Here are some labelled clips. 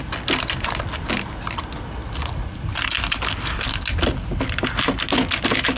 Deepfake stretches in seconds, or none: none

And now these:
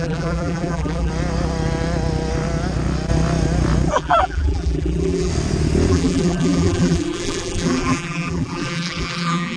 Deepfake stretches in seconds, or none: 0.0-1.1; 3.9-5.3; 5.9-9.6

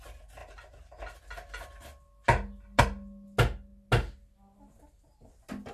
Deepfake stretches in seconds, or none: none